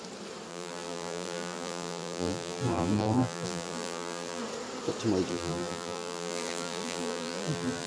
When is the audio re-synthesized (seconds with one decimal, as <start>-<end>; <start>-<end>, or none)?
0.5-4.4; 5.3-7.9